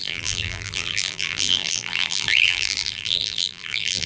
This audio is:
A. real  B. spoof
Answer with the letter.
B